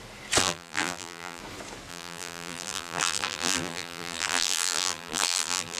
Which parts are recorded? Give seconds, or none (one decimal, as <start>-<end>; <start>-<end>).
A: 0.0-0.4; 1.4-1.9